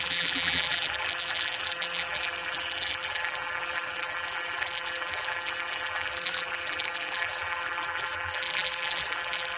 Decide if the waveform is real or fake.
fake